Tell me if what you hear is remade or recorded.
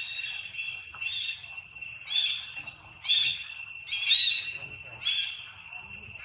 recorded